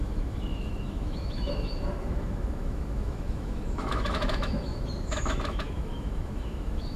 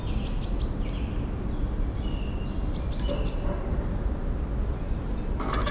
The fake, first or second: first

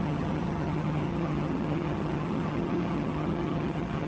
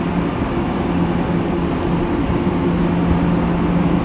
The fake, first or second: first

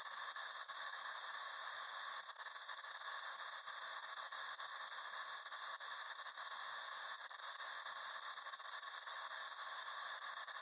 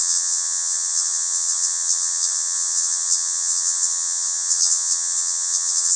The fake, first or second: second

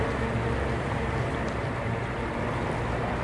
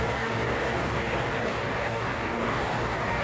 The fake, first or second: second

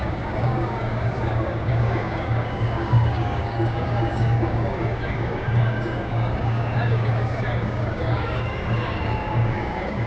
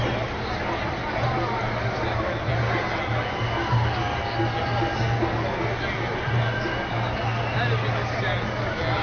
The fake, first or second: first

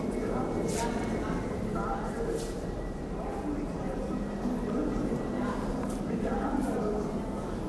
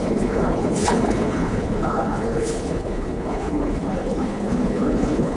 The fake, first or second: second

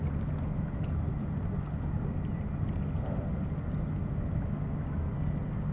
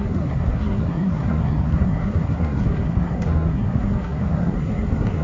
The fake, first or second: second